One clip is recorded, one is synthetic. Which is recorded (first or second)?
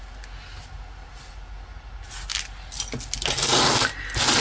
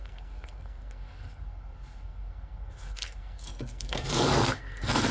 first